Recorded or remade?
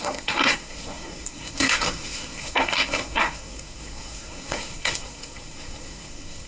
remade